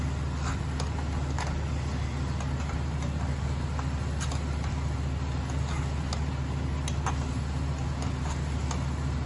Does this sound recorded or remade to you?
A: recorded